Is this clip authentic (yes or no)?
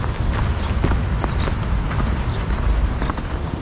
yes